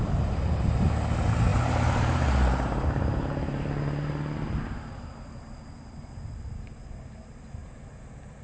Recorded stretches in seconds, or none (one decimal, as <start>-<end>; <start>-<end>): 0.0-1.5; 4.6-8.4